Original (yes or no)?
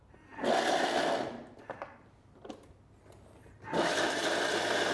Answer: yes